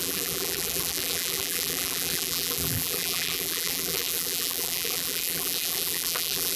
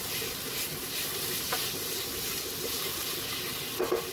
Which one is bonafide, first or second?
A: second